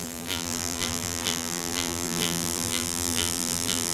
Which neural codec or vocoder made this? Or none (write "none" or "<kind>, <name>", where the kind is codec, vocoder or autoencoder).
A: vocoder, BigVGAN v2